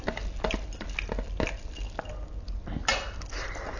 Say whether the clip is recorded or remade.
recorded